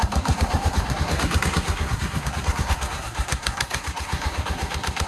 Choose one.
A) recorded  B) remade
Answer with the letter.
B